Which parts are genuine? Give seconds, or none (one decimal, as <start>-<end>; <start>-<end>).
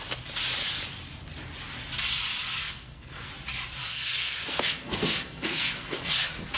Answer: 0.0-2.6; 3.3-3.8; 6.1-6.6